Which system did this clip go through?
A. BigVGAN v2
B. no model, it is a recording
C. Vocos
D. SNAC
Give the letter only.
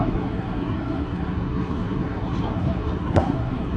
D